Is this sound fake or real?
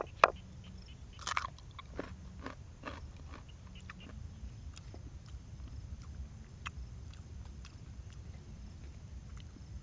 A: real